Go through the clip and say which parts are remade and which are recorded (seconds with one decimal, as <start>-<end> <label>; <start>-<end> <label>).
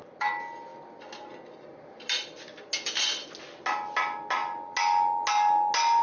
0.0-6.0 recorded